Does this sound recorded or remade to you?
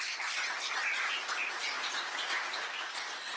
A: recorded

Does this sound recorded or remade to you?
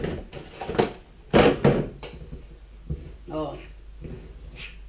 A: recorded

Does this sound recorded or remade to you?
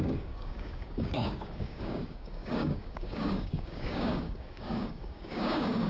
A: remade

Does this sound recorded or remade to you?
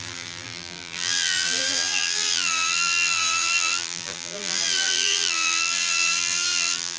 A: remade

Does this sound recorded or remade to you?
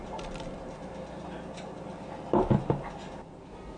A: remade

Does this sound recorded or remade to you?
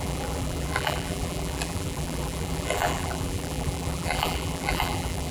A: remade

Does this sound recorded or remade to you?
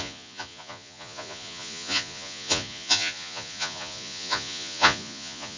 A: remade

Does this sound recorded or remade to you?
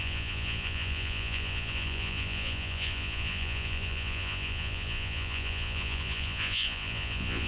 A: remade